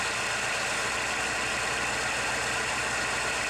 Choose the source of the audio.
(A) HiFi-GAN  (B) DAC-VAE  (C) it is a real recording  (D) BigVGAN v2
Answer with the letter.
C